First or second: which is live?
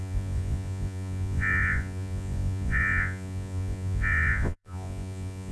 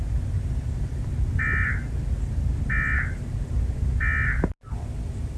second